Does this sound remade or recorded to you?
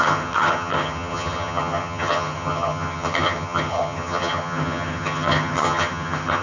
remade